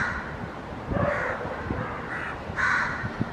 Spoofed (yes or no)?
yes